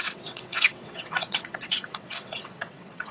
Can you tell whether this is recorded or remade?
remade